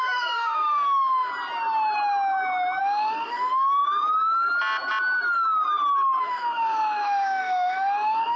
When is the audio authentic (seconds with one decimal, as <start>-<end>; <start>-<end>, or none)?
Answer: 1.3-2.8; 3.8-6.2